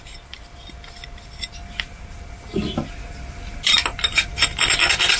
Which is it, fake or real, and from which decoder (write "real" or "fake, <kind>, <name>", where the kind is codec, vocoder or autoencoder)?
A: real